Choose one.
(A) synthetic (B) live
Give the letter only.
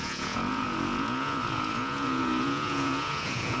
A